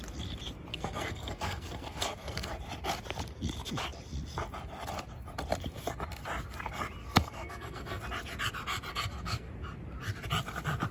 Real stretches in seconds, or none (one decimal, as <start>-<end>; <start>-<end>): 0.0-0.7; 2.5-7.0; 8.0-8.9; 9.5-10.9